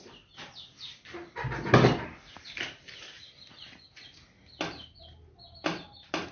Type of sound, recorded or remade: recorded